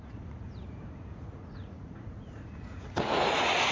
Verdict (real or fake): fake